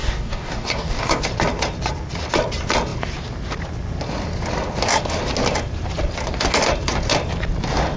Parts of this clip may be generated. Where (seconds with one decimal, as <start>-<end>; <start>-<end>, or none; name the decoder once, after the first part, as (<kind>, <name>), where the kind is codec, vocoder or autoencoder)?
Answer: 0.0-1.2 (codec, DAC)